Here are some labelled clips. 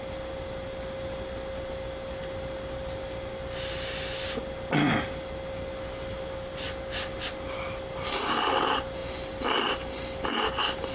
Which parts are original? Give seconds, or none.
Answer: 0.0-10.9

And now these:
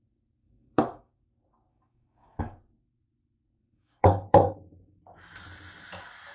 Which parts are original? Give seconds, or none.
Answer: 0.0-0.4; 1.1-1.7; 2.6-3.6; 5.0-6.3

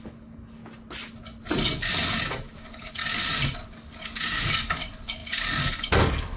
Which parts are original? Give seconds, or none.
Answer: 0.6-2.6; 3.0-3.6

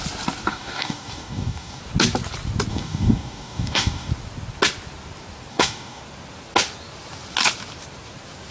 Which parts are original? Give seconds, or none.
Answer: 0.0-0.5; 1.8-2.7; 4.1-5.5; 6.0-8.5

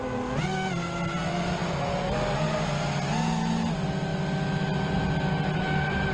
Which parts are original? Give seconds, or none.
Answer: 0.0-6.1

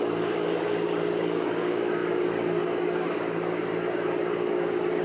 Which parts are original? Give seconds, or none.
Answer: 3.7-4.2

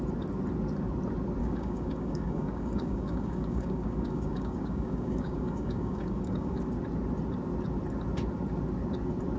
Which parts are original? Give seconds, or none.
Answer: 0.0-1.4; 6.6-9.4

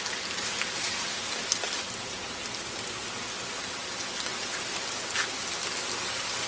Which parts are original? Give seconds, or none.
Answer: 0.0-6.5